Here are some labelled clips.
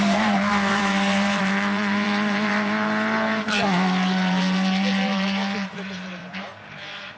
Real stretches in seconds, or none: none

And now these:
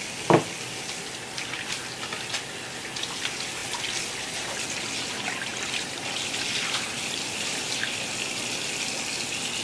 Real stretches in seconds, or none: 0.0-5.5; 8.7-9.6